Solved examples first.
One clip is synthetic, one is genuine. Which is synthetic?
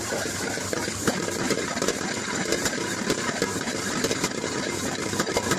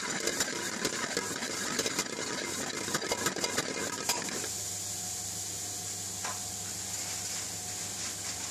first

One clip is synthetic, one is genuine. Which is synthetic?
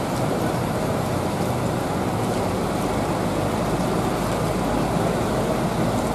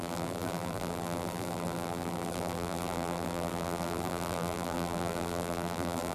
second